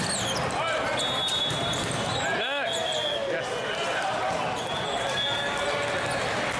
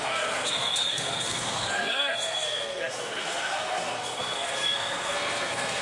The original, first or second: first